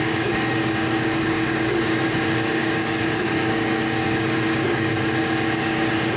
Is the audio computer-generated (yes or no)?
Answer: yes